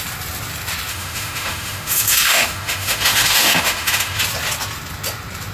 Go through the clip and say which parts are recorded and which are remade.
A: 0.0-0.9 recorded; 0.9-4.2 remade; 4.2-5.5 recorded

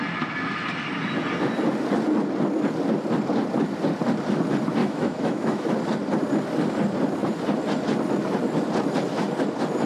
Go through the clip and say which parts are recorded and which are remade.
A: 0.0-4.8 recorded; 4.8-5.7 remade; 5.7-9.9 recorded

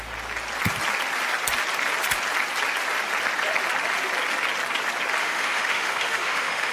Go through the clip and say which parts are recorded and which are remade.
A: 0.0-5.2 recorded; 5.2-6.7 remade